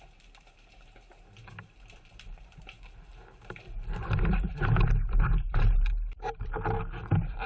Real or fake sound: fake